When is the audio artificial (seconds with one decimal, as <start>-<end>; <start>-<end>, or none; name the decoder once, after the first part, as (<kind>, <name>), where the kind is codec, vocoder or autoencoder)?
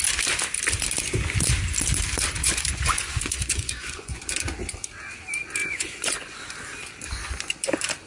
2.4-4.2 (vocoder, Vocos); 5.6-6.4